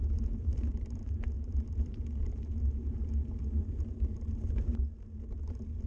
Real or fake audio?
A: fake